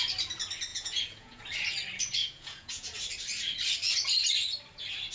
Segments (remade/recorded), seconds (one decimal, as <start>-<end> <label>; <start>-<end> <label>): 0.0-0.7 recorded; 0.7-1.4 remade; 1.4-2.2 recorded; 2.2-3.0 remade; 3.0-5.1 recorded